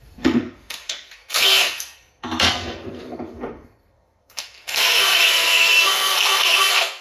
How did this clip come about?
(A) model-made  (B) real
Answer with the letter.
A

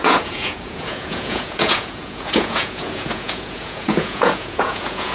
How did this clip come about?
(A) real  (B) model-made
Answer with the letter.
B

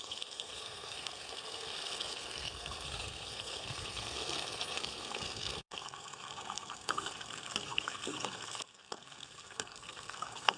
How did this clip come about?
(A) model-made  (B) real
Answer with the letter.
A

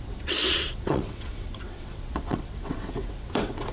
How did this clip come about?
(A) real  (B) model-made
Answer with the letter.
B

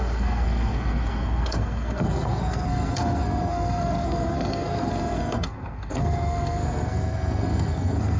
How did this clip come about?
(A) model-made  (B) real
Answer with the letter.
A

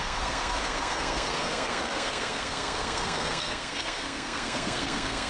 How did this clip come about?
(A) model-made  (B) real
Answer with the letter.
A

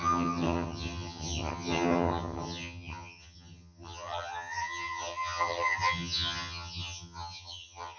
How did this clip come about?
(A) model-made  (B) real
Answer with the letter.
A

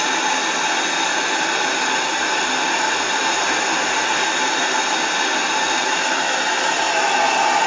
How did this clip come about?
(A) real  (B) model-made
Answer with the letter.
A